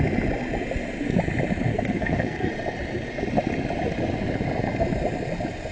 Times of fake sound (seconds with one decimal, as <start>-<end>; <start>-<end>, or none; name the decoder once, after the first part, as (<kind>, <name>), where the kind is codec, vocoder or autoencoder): 1.7-2.5 (codec, SNAC)